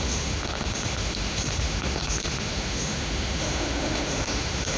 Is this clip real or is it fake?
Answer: fake